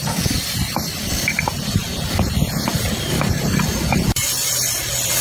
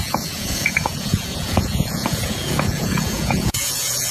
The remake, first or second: second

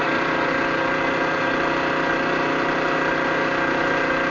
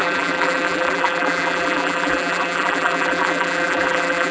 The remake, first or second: second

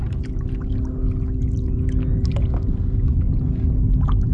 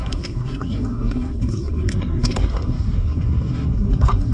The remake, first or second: second